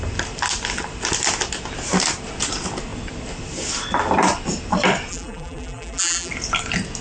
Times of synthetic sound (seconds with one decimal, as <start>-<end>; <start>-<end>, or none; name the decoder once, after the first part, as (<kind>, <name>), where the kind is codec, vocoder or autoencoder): 5.1-6.3 (vocoder, BigVGAN v2)